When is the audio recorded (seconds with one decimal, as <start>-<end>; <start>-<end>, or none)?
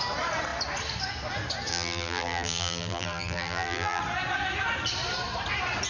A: 0.0-1.7; 4.0-5.9